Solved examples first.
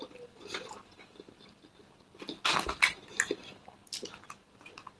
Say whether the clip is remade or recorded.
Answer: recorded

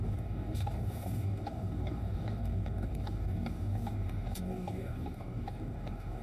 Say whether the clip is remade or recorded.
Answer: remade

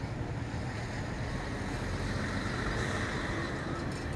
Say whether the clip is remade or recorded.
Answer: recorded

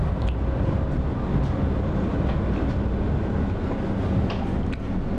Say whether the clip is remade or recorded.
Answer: recorded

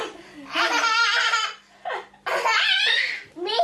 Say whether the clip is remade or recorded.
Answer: recorded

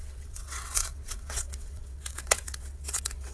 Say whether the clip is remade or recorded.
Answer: remade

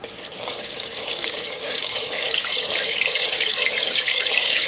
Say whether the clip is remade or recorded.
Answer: remade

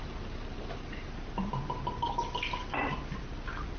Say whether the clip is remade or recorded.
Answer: recorded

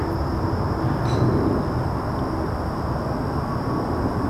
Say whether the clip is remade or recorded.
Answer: recorded